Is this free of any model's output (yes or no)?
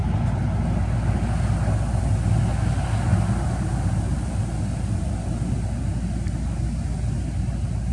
yes